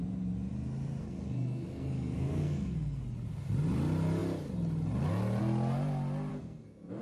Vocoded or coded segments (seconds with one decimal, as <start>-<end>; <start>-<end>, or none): 1.0-3.0; 6.3-7.0